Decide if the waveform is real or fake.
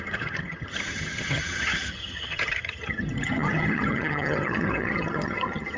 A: fake